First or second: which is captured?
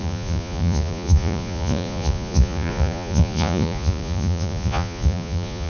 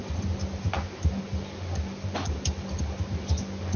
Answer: second